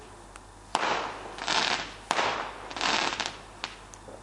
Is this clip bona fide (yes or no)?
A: yes